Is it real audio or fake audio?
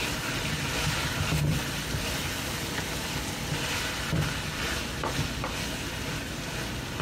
real